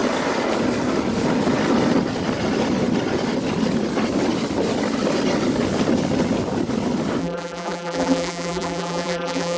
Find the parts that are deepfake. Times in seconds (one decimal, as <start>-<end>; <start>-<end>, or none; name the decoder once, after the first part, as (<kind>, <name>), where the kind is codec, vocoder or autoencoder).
7.2-9.6 (vocoder, BigVGAN v2)

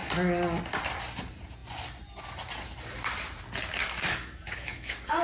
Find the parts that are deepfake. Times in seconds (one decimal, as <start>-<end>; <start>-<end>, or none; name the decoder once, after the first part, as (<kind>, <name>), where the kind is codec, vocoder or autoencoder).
3.8-5.2 (codec, DAC)

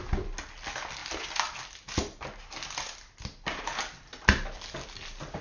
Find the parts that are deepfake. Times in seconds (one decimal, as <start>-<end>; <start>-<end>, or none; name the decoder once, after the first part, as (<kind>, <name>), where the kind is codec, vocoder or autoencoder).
none